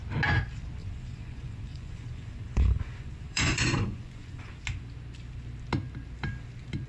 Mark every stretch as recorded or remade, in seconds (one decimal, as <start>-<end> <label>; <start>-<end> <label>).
0.0-0.8 recorded; 0.8-4.5 remade; 4.5-6.9 recorded